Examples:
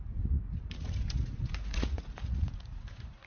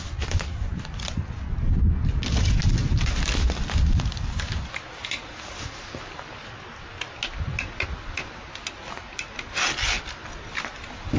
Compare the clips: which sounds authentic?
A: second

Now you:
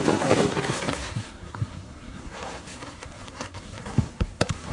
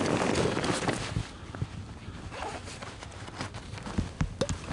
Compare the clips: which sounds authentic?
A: second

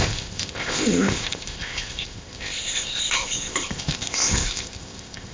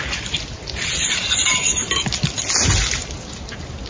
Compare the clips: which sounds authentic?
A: second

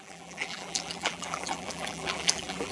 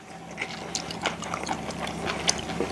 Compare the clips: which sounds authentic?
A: second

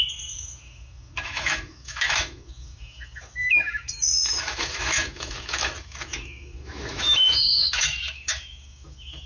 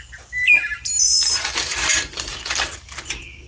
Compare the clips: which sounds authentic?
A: second